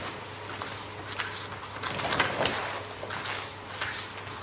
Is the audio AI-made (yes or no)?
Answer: no